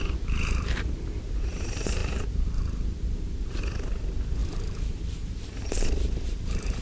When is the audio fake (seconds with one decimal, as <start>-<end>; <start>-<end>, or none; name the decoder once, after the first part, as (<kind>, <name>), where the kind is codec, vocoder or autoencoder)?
0.0-6.8 (vocoder, BigVGAN v2)